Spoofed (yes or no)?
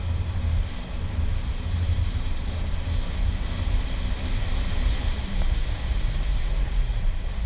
yes